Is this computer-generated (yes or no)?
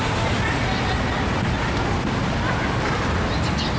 no